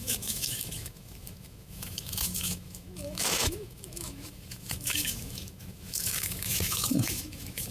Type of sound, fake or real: fake